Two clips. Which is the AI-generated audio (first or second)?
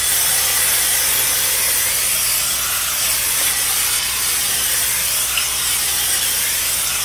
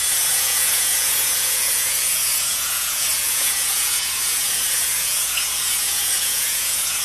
second